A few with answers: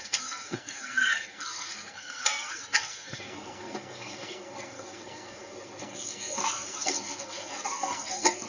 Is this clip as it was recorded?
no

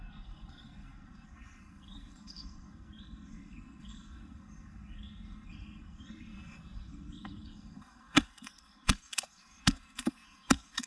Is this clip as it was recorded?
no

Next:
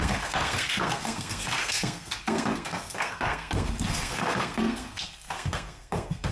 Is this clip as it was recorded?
no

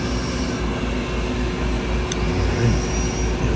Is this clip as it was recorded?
yes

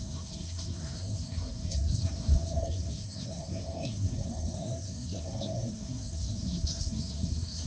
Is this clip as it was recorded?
no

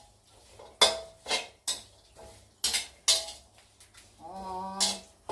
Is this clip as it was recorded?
yes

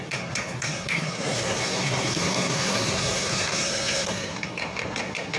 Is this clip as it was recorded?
no